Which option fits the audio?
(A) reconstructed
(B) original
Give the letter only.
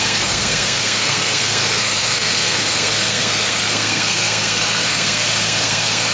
A